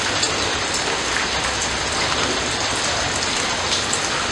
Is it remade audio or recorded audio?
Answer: recorded